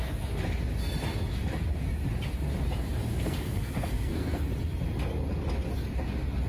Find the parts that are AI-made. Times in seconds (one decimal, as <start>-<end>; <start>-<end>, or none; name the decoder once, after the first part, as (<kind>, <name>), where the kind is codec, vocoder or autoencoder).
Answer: 3.1-4.4 (codec, SNAC)